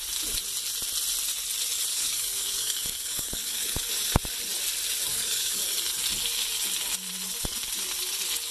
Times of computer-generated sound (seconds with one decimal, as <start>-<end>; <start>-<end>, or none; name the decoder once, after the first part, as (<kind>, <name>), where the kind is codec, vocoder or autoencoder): 1.9-3.9 (codec, DAC); 5.1-5.6